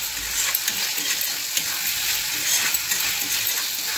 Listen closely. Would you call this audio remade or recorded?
recorded